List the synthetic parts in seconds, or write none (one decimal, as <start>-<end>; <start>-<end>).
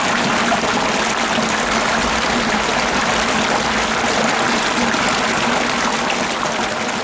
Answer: none